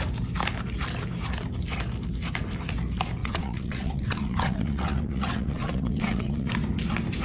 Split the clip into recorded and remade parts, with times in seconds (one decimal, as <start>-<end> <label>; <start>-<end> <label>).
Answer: 0.0-3.2 recorded; 3.2-6.5 remade; 6.5-7.2 recorded